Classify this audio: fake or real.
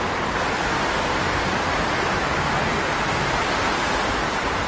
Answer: real